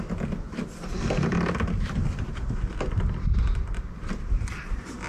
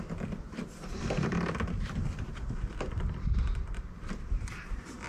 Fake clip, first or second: second